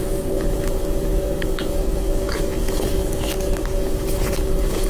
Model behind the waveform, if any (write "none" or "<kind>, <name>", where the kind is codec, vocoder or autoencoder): codec, DAC